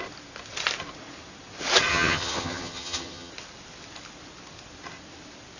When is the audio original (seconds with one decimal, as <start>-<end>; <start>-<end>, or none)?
0.0-1.9; 3.3-5.6